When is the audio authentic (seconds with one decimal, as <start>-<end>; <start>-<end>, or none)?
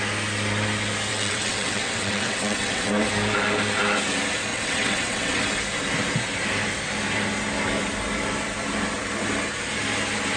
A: 0.0-1.1; 2.9-4.5; 5.4-10.4